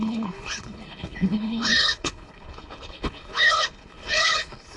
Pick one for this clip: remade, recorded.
remade